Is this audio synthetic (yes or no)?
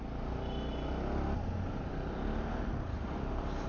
no